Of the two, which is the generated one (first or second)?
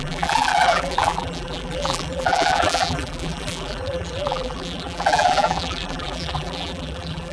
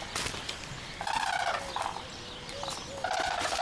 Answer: first